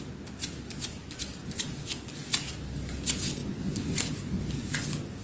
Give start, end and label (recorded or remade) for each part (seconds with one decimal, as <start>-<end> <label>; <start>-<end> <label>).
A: 0.0-5.2 recorded